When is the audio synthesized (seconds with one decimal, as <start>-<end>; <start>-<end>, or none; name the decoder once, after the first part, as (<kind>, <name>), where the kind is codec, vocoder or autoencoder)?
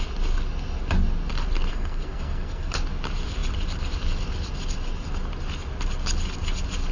1.7-2.7 (codec, SNAC)